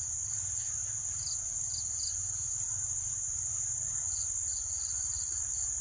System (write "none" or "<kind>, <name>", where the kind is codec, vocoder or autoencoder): none